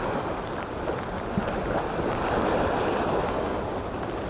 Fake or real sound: real